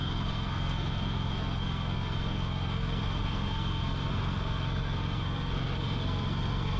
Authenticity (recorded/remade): remade